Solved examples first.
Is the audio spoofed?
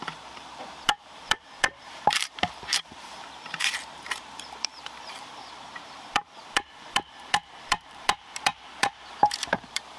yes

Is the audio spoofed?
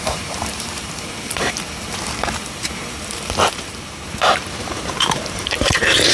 yes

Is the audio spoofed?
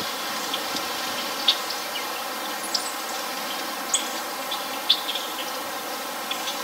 no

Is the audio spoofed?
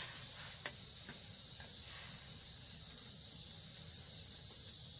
no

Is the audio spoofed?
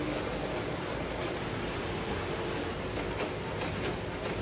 no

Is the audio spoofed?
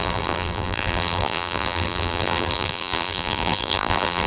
yes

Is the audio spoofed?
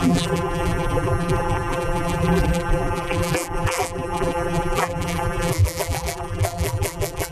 yes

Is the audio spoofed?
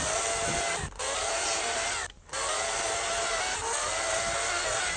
no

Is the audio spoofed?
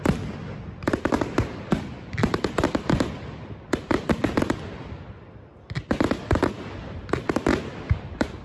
no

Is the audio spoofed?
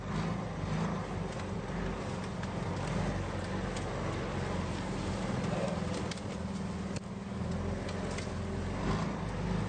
no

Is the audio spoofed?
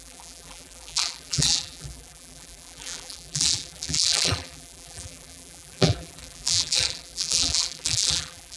yes